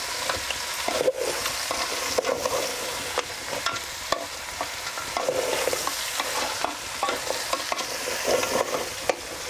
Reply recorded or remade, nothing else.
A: recorded